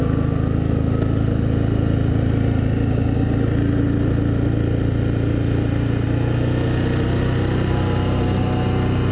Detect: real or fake real